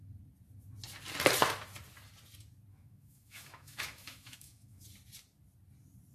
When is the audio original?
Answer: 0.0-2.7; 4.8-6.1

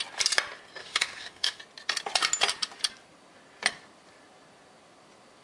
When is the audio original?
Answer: 0.0-0.8; 1.6-5.4

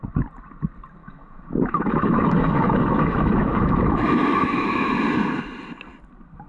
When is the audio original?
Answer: 0.0-1.0; 4.9-6.5

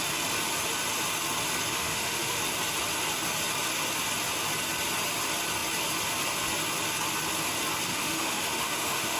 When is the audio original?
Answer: 0.0-1.7; 2.4-7.9

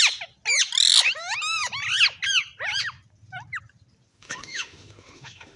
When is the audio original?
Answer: 0.0-4.1

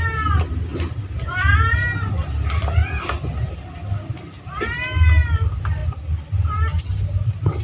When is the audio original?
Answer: 0.0-7.6

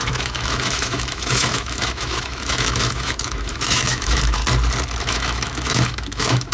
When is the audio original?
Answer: 4.4-5.0